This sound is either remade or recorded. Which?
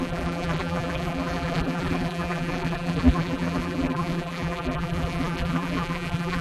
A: remade